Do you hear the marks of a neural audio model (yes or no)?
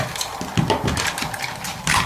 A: no